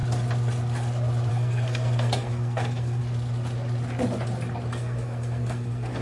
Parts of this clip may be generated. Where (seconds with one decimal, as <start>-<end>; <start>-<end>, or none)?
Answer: 1.3-3.0; 4.7-6.0